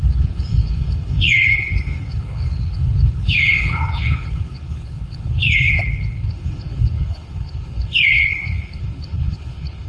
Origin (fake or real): fake